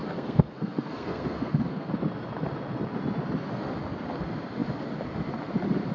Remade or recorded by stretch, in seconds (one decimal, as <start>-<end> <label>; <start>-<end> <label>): 0.0-1.9 remade; 1.9-5.9 recorded